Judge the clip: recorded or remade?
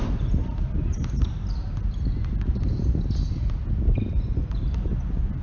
recorded